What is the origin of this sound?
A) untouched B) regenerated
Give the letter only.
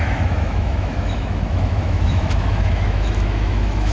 B